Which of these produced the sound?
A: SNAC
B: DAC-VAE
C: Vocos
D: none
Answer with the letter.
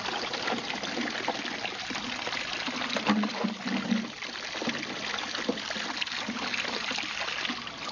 D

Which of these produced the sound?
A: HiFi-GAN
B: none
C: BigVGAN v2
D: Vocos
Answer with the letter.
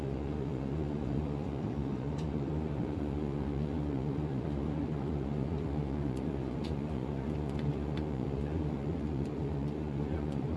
D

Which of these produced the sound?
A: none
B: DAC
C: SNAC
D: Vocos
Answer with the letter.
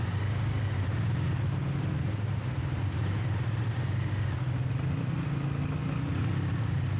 A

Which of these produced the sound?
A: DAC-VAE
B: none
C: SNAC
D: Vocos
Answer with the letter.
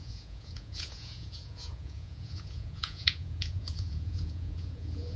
D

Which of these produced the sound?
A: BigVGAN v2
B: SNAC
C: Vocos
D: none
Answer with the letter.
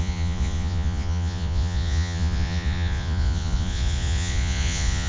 C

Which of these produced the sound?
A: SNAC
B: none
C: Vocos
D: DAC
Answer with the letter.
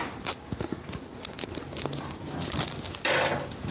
B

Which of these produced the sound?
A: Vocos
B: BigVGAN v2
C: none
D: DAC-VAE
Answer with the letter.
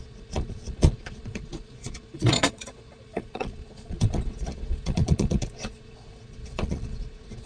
A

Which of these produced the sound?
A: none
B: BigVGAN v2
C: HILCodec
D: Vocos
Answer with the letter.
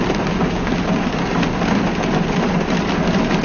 A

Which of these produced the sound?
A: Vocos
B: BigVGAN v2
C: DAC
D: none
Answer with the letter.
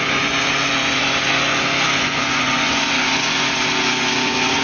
A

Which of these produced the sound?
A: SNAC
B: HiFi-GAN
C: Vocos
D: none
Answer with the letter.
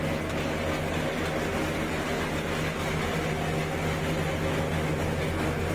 D